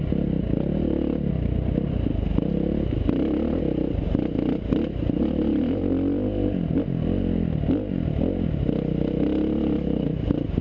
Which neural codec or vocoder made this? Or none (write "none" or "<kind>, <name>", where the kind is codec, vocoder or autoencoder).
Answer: none